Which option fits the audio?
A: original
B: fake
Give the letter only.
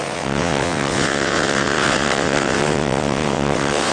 B